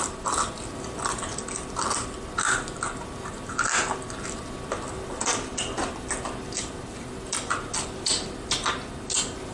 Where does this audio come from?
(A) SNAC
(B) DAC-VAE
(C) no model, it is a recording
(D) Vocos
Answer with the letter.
C